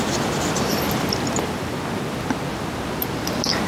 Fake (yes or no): no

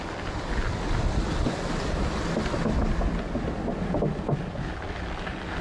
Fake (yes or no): no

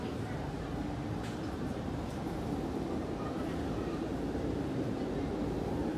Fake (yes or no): yes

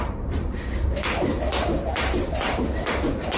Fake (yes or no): yes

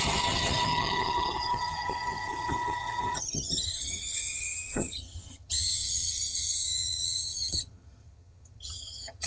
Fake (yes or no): yes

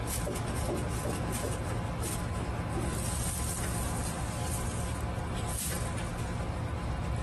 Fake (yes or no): no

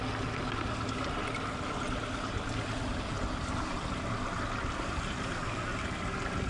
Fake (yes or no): no